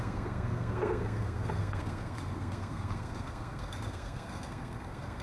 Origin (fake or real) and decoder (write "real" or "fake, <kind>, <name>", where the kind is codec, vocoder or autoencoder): fake, codec, SNAC